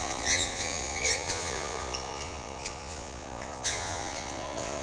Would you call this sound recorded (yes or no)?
no